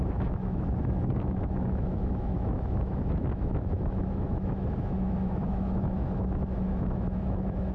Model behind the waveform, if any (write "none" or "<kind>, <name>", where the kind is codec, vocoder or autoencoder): autoencoder, DAC-VAE